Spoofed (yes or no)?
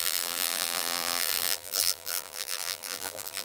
yes